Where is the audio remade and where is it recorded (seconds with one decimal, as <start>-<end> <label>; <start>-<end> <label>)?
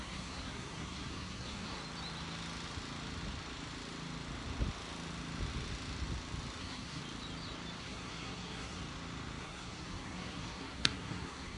0.0-1.8 remade; 1.8-6.6 recorded; 6.6-7.0 remade; 7.0-7.8 recorded; 7.8-8.8 remade; 8.8-9.4 recorded; 9.4-11.6 remade